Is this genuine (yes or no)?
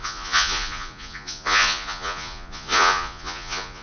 no